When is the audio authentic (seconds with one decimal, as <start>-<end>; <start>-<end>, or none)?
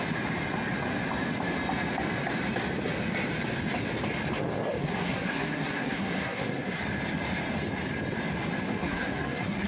0.0-4.8; 6.8-8.7